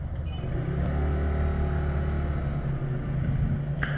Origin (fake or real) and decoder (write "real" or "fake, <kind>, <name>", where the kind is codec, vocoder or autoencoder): real